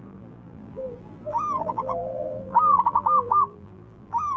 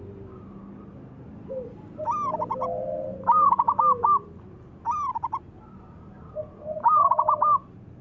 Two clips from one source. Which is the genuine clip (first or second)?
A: second